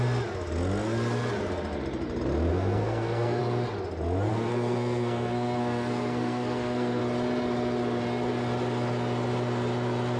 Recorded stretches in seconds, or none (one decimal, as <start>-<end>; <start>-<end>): 0.0-2.5; 3.4-4.3; 7.0-10.2